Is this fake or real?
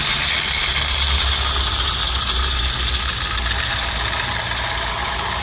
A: real